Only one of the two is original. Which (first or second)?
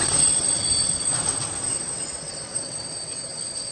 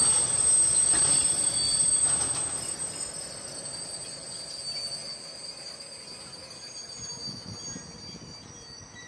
second